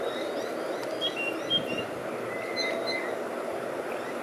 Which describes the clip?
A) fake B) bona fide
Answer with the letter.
A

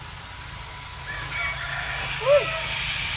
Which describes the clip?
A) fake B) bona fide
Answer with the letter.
B